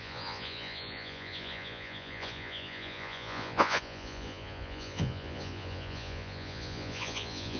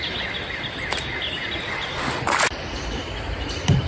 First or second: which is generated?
first